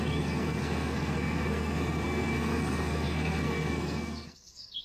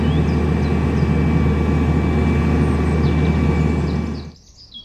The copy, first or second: first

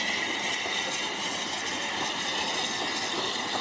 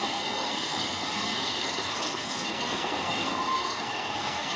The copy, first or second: second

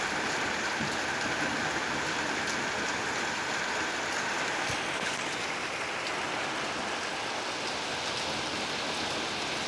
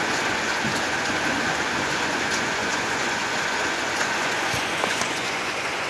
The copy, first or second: second